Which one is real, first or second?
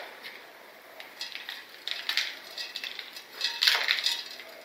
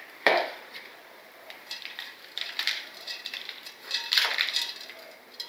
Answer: first